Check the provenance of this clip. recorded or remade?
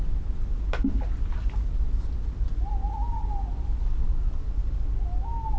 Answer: recorded